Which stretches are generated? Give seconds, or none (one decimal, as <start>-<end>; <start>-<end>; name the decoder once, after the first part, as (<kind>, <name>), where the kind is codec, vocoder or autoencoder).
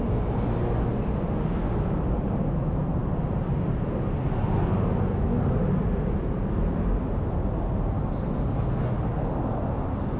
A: none